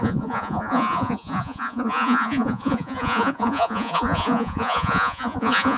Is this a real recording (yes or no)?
no